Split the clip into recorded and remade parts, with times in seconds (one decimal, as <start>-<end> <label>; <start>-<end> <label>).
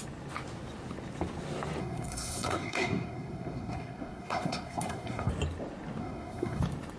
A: 0.0-1.8 recorded; 1.8-5.3 remade; 5.3-6.0 recorded; 6.0-6.6 remade; 6.6-7.0 recorded